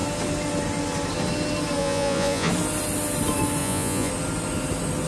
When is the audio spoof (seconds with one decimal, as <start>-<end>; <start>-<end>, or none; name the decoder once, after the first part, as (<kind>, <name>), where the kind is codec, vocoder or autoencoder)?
1.8-2.5 (vocoder, Vocos); 3.6-4.1